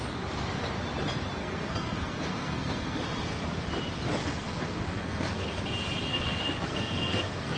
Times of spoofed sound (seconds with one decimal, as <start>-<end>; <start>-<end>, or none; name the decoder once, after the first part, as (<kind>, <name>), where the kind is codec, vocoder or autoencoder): 1.4-3.0 (codec, SNAC); 4.2-5.6; 6.1-7.6